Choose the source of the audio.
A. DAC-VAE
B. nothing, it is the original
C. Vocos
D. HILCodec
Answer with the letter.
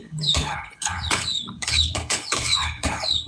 D